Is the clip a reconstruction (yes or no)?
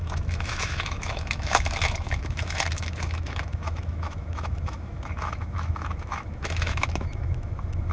yes